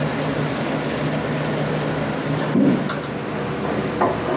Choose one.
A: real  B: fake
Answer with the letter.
A